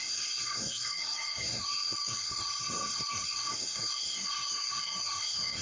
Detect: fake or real fake